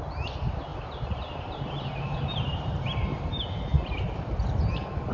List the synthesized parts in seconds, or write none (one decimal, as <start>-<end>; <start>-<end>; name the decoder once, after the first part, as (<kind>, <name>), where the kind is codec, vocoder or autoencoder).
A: 0.7-1.7 (vocoder, BigVGAN v2); 2.1-3.0